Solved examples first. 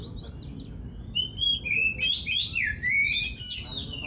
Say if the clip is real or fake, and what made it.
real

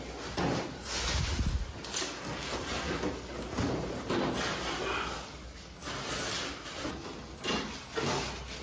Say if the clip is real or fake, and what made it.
real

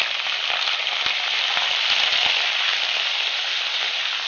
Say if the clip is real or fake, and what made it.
real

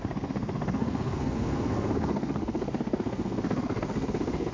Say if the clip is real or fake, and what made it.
fake, codec, SNAC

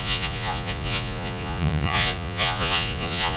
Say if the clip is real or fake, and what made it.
fake, vocoder, Vocos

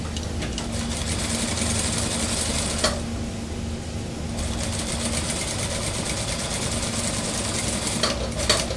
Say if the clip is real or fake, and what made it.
real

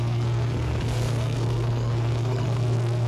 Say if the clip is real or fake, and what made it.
fake, codec, SNAC